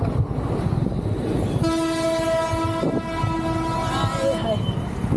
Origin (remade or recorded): recorded